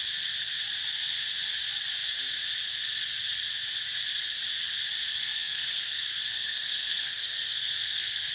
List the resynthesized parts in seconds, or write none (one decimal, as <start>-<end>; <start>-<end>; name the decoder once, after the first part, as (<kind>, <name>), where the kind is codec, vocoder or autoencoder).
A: 5.1-8.3 (codec, SNAC)